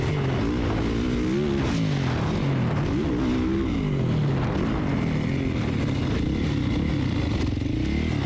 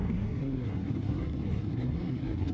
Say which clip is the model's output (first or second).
second